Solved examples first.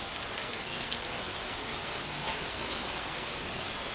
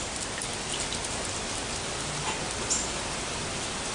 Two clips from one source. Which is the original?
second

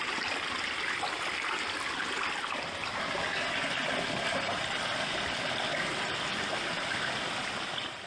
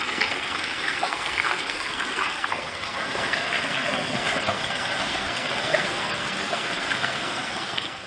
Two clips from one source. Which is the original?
first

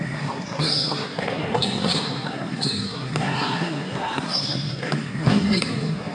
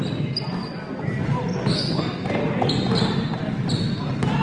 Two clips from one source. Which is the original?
second